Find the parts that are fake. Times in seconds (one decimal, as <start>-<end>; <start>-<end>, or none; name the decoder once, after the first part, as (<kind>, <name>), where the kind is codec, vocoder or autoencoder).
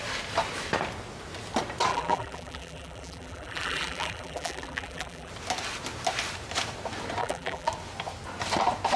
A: 1.9-5.3 (vocoder, BigVGAN v2); 7.2-7.7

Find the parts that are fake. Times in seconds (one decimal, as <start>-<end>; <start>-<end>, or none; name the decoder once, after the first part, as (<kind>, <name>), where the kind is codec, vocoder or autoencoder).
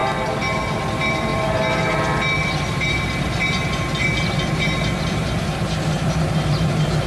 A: 0.8-7.1 (vocoder, BigVGAN v2)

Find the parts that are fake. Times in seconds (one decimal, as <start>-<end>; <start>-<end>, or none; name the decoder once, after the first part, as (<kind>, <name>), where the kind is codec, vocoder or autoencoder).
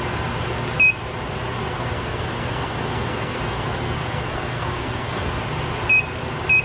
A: 1.6-5.3 (codec, SNAC)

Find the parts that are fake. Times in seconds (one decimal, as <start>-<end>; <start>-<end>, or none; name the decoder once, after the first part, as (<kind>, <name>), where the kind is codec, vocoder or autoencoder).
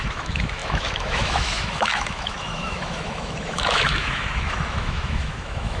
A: 0.0-5.8 (autoencoder, DAC-VAE)